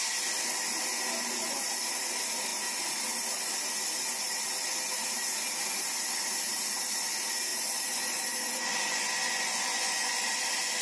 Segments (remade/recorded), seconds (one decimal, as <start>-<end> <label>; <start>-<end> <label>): 0.0-7.5 recorded; 7.5-10.4 remade; 10.4-10.8 recorded